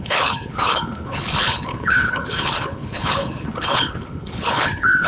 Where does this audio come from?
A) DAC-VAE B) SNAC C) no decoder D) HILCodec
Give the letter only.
D